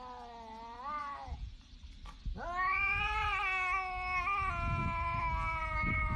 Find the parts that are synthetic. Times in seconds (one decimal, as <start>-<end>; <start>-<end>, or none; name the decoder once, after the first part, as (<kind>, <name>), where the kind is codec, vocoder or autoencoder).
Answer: 1.0-1.6 (vocoder, Vocos); 2.7-3.4